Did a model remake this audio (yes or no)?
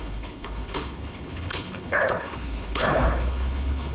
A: yes